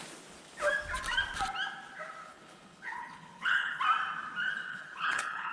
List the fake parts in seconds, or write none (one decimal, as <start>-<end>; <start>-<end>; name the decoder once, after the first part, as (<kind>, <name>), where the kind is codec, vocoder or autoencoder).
2.2-3.8 (codec, HILCodec); 4.7-5.5